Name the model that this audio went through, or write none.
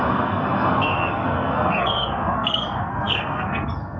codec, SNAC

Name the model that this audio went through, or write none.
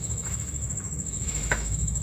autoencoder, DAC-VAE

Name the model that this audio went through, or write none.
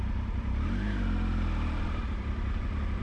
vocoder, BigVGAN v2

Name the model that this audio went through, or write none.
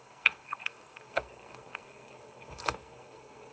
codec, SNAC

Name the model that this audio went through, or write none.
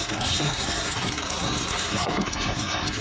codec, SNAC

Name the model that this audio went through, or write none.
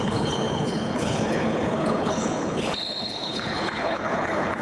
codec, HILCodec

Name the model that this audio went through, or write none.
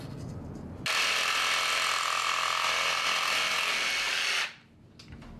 none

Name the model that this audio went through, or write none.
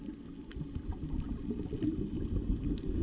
none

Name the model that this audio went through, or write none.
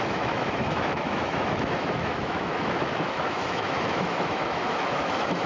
autoencoder, DAC-VAE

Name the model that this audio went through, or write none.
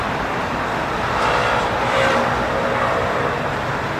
none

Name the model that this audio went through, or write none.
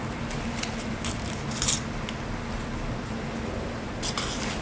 none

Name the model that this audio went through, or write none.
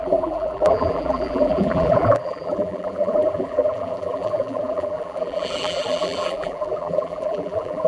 vocoder, BigVGAN v2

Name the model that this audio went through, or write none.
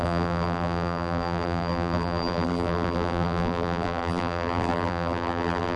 vocoder, BigVGAN v2